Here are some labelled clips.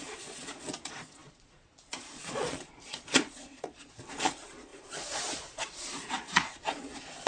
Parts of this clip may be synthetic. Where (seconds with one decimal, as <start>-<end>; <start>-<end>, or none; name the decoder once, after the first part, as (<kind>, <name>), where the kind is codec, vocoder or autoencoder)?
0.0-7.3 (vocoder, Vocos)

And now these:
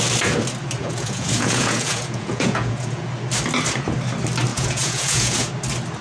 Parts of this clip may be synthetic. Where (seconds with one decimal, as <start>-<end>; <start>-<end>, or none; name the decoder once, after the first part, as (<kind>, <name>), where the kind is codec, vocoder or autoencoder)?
0.8-3.1 (vocoder, Vocos); 4.5-5.5

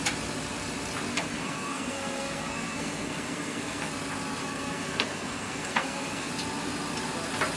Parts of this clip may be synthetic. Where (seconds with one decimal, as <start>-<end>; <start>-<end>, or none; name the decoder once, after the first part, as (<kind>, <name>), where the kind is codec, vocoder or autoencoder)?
1.1-3.9 (codec, SNAC); 4.4-6.3